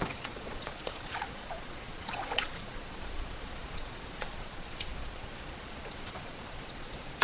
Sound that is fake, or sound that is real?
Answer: fake